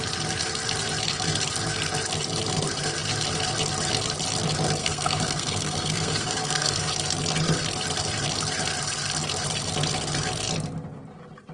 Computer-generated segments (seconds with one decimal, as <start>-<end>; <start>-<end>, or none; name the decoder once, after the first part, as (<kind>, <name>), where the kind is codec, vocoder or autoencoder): 4.8-6.9 (codec, SNAC)